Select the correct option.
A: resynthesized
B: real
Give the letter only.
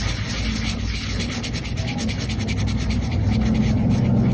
B